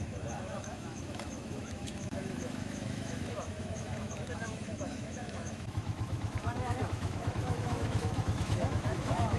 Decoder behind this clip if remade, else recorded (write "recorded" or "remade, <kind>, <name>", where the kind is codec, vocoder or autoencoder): remade, autoencoder, DAC-VAE